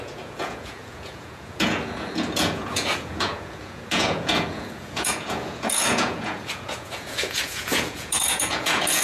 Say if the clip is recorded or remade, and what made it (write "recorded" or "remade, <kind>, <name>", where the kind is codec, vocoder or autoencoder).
remade, vocoder, Vocos